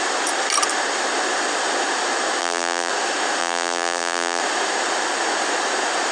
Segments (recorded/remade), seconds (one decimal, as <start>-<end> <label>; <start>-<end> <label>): 0.0-2.4 recorded; 2.4-2.9 remade; 2.9-3.4 recorded; 3.4-4.4 remade; 4.4-6.1 recorded